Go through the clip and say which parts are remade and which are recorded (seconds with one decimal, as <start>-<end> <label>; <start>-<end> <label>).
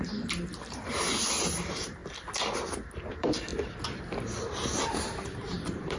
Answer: 0.0-2.0 remade; 2.0-3.1 recorded; 3.1-3.5 remade; 3.5-4.4 recorded; 4.4-6.0 remade